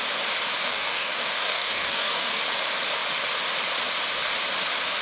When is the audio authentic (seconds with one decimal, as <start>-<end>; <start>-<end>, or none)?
0.0-0.7; 2.4-5.0